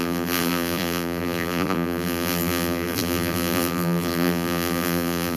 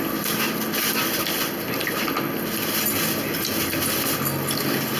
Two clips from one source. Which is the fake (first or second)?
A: first